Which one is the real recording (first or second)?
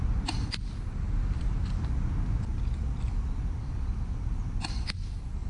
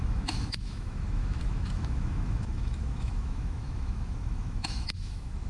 first